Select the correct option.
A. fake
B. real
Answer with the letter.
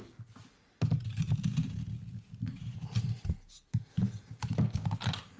B